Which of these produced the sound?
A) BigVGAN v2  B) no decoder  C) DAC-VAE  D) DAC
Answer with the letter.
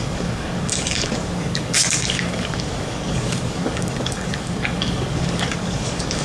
D